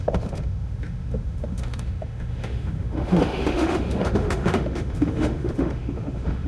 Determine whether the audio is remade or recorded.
remade